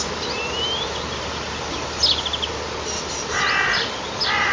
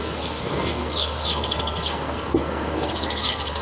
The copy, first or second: second